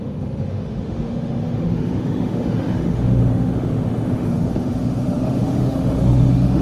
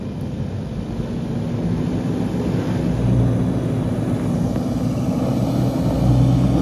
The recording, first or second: second